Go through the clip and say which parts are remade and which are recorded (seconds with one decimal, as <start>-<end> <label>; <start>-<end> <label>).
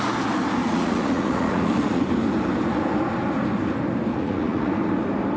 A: 0.0-0.6 recorded; 0.6-2.0 remade; 2.0-4.1 recorded; 4.1-4.7 remade; 4.7-5.4 recorded